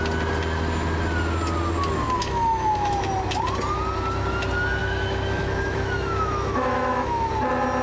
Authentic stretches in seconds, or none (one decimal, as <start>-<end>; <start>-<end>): 0.0-2.2; 3.1-4.8; 7.3-7.8